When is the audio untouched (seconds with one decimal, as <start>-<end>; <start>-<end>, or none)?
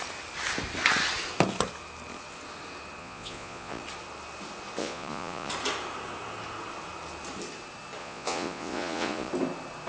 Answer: 0.0-3.0; 3.8-4.8; 5.5-8.0; 9.3-9.9